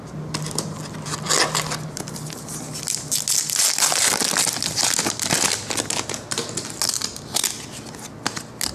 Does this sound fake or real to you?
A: real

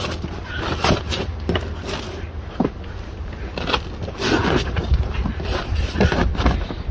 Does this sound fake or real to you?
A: real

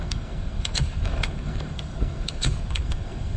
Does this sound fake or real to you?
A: fake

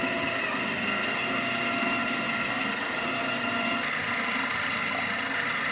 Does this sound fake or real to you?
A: real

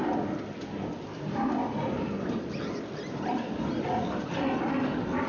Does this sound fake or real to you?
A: real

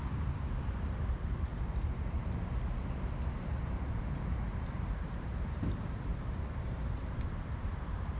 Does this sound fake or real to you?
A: fake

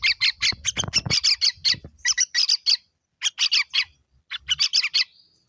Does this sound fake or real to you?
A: real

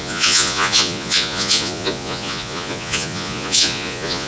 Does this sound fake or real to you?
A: fake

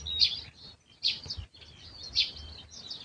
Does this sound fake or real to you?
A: real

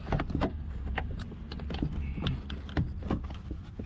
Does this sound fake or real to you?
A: real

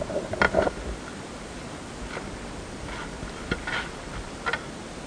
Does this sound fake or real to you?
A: real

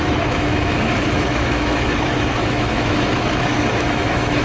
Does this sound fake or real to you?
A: fake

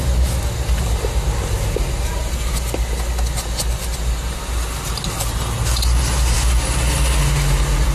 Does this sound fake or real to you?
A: real